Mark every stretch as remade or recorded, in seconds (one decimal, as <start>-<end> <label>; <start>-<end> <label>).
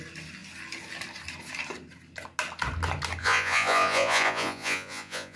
0.0-3.2 recorded; 3.2-5.4 remade